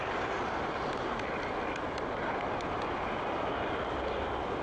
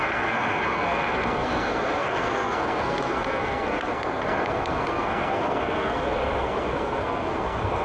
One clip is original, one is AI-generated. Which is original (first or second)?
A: first